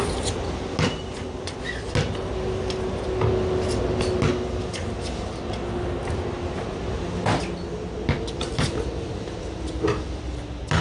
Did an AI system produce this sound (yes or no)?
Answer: no